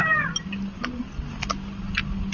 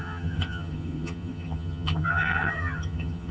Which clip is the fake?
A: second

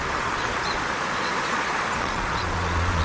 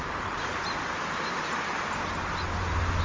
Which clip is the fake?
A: first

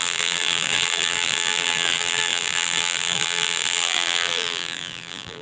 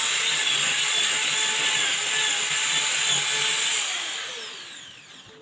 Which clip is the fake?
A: first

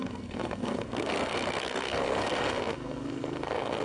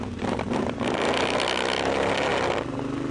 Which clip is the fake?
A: first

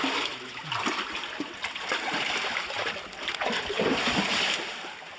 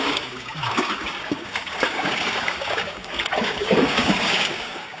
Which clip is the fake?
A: second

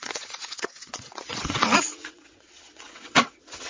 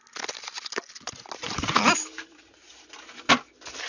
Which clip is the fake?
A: first